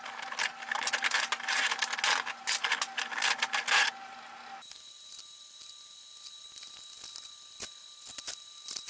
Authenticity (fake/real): real